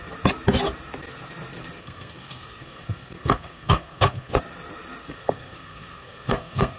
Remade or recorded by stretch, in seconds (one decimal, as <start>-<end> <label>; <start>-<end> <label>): 0.0-1.8 recorded; 1.8-4.4 remade; 4.4-5.0 recorded; 5.0-6.8 remade